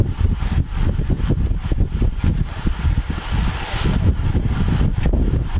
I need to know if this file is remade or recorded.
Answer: remade